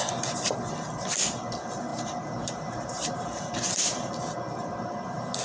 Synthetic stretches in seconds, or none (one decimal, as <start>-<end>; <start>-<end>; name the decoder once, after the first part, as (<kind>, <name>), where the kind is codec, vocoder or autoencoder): 1.9-4.1 (vocoder, BigVGAN v2)